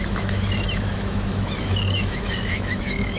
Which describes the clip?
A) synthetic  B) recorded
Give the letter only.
A